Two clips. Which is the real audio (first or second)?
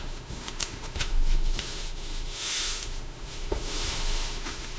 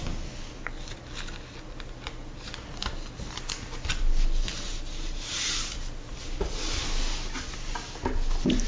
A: second